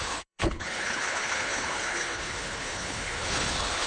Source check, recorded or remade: remade